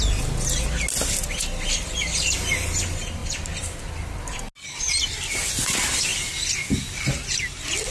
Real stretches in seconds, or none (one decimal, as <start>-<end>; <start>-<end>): 0.0-3.2; 4.4-7.9

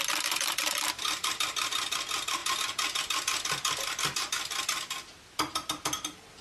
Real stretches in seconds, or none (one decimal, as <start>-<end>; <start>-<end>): 0.0-6.4

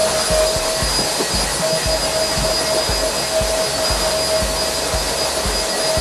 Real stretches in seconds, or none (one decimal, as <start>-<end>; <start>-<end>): 0.0-6.0

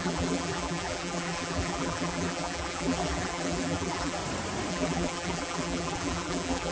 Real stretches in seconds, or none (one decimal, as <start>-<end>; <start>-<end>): 4.2-4.7

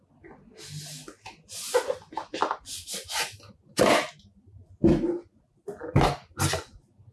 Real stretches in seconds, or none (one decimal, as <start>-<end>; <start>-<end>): 0.0-7.1